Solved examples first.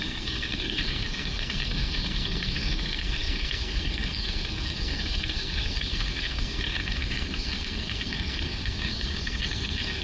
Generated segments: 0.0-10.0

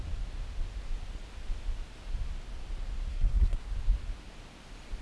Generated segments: 3.1-3.7

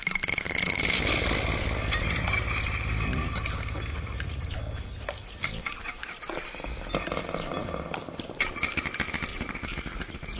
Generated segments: 3.9-4.5; 9.3-10.4

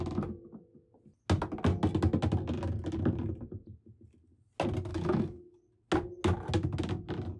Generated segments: 4.9-5.6

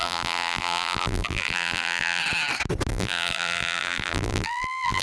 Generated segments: 0.0-2.2; 2.9-5.0

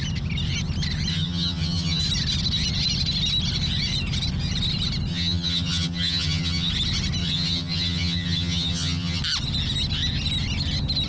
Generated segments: 1.1-2.0; 5.1-6.7; 7.2-9.2

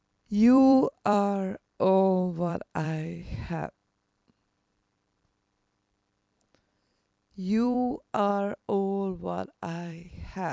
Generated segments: 0.0-10.5

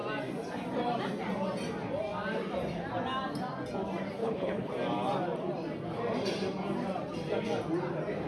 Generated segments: 4.2-4.7